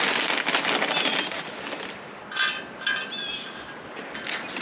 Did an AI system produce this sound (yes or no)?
no